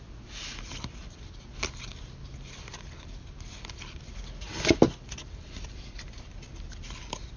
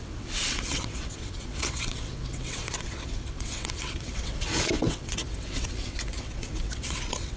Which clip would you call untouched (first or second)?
first